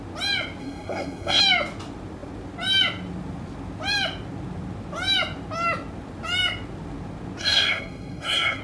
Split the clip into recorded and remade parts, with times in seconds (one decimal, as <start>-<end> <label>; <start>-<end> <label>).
0.0-0.6 recorded; 0.6-1.4 remade; 1.4-7.4 recorded; 7.4-8.6 remade